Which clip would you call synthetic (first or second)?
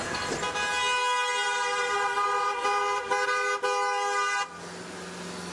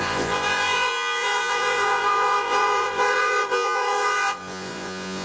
second